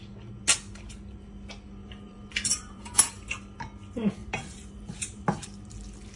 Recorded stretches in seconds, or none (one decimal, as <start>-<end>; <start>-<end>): 0.0-1.8; 3.0-4.2; 5.3-6.2